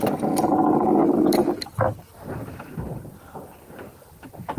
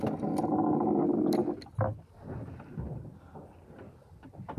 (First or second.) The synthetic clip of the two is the first